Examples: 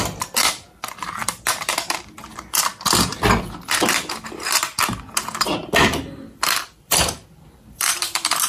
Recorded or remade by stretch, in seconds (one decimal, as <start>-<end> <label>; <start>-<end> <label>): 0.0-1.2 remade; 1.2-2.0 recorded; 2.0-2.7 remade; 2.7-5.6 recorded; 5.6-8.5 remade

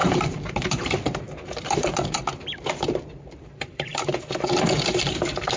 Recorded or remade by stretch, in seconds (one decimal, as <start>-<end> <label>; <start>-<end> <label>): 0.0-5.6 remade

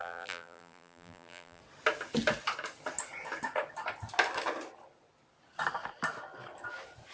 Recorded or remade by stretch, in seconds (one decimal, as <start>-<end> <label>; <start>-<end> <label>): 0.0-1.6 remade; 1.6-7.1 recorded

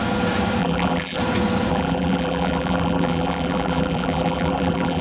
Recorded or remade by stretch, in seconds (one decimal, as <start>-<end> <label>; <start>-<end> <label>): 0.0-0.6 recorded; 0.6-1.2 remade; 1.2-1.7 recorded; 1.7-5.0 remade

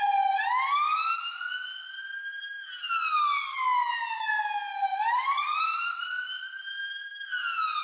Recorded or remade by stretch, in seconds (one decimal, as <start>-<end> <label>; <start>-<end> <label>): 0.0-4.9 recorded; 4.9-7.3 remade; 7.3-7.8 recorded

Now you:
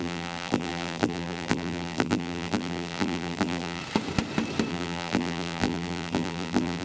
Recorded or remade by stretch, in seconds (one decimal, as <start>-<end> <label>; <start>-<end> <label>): 0.0-3.8 remade; 3.8-4.7 recorded; 4.7-6.8 remade

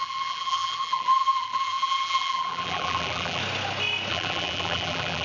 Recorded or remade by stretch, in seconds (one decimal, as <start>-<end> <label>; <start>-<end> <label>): 0.0-3.4 remade; 3.4-4.1 recorded; 4.1-5.2 remade